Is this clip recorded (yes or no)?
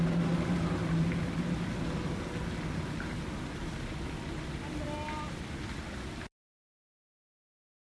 yes